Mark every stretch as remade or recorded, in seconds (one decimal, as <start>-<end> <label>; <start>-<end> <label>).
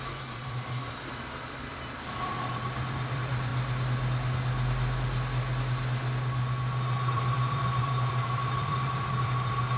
0.0-3.5 remade; 3.5-7.1 recorded; 7.1-9.8 remade